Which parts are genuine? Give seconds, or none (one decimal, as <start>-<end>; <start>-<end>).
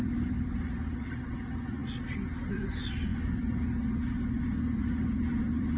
1.8-2.5; 3.1-4.4